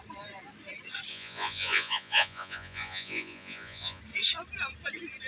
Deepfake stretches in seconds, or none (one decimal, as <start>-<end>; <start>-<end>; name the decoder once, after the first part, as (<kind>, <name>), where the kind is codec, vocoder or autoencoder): 1.1-4.0 (vocoder, Vocos)